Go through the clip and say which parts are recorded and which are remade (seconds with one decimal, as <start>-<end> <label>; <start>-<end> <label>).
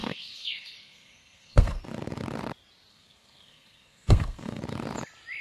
0.0-1.8 remade; 1.8-2.9 recorded; 2.9-4.6 remade; 4.6-5.4 recorded